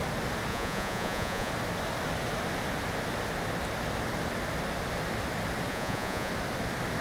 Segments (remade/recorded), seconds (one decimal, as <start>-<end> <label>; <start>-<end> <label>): 0.0-0.5 recorded; 0.5-1.5 remade; 1.5-5.7 recorded; 5.7-6.3 remade; 6.3-7.0 recorded